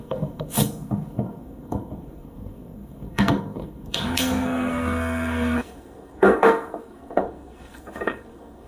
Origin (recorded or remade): remade